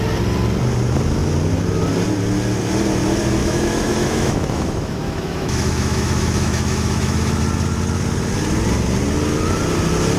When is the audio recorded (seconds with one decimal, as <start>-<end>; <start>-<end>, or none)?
0.0-3.4; 7.4-10.2